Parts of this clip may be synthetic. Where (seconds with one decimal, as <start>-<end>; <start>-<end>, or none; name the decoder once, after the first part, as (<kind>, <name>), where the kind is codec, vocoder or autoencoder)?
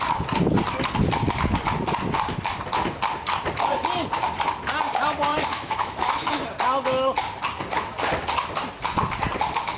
5.3-6.3 (autoencoder, DAC-VAE)